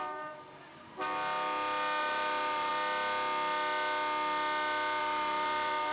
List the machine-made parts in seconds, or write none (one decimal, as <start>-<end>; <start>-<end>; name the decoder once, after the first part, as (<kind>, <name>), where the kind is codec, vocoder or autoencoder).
0.0-0.7 (vocoder, BigVGAN v2); 2.0-2.7; 5.0-5.9